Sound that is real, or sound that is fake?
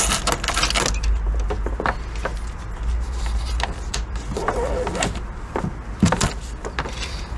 real